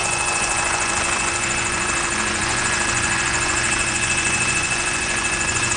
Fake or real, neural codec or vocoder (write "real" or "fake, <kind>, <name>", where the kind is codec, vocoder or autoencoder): fake, vocoder, Vocos